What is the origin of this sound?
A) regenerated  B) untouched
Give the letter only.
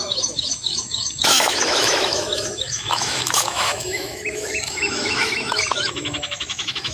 A